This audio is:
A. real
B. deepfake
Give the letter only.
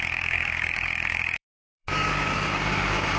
B